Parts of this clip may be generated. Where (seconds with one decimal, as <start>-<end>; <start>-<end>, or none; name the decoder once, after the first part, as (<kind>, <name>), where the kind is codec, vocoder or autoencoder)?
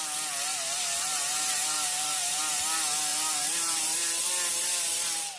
0.5-2.4 (vocoder, BigVGAN v2); 3.1-4.0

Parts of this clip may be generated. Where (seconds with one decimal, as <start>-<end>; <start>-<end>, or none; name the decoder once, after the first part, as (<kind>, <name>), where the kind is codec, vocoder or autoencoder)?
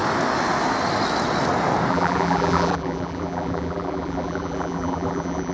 1.9-5.5 (vocoder, BigVGAN v2)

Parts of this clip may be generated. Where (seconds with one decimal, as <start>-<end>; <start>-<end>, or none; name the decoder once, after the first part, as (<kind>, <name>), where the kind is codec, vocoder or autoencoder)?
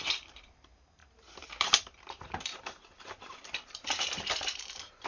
0.0-5.1 (vocoder, BigVGAN v2)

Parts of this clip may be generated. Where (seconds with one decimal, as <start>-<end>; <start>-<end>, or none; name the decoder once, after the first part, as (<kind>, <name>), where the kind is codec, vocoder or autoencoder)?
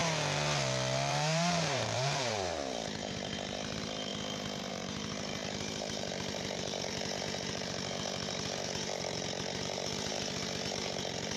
1.1-4.1 (vocoder, BigVGAN v2); 4.7-11.4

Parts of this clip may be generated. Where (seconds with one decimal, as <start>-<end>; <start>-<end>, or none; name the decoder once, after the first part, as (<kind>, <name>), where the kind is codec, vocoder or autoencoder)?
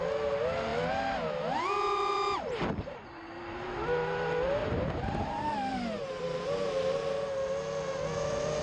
4.6-6.7 (vocoder, BigVGAN v2)